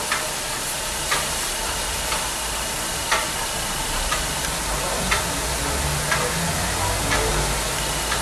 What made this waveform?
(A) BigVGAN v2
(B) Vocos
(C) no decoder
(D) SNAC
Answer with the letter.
C